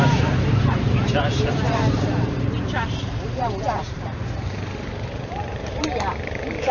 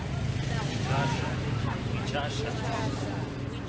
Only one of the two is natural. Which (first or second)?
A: second